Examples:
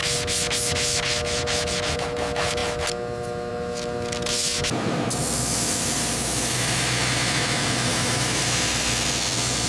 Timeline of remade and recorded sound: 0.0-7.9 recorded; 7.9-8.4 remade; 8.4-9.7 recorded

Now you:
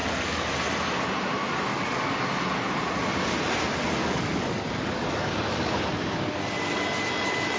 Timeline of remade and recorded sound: 0.0-0.5 remade; 0.5-1.7 recorded; 1.7-2.2 remade; 2.2-4.0 recorded; 4.0-5.7 remade; 5.7-7.6 recorded

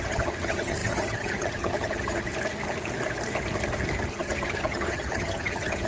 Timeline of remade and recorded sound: 0.0-2.3 remade; 2.3-4.1 recorded; 4.1-5.9 remade

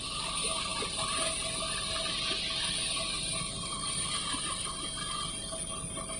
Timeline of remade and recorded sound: 0.0-6.2 recorded

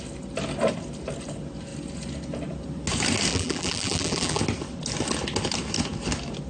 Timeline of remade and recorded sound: 0.0-3.3 recorded; 3.3-4.4 remade; 4.4-6.5 recorded

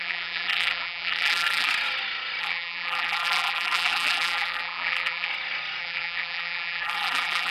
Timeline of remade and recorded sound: 0.0-1.7 remade; 1.7-2.4 recorded; 2.4-5.3 remade; 5.3-5.8 recorded; 5.8-7.5 remade

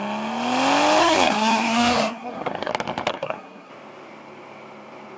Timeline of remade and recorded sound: 0.0-1.0 recorded; 1.0-2.7 remade; 2.7-3.1 recorded; 3.1-3.7 remade; 3.7-5.2 recorded

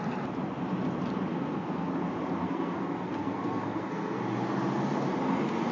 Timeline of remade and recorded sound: 0.0-1.3 recorded; 1.3-1.9 remade; 1.9-2.4 recorded; 2.4-4.2 remade; 4.2-5.7 recorded